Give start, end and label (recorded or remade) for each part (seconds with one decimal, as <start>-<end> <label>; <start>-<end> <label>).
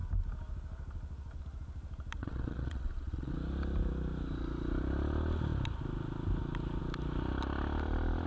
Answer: 0.0-2.2 recorded; 2.2-3.3 remade; 3.3-8.3 recorded